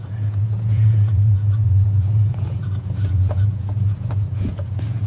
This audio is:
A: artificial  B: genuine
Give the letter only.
A